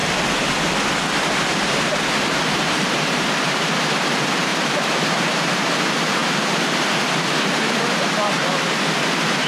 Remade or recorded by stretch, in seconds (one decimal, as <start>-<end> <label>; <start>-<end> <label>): 0.0-1.8 recorded; 1.8-9.5 remade